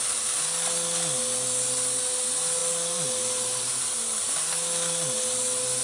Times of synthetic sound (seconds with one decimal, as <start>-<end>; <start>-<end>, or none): none